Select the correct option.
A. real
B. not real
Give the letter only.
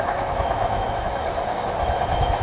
B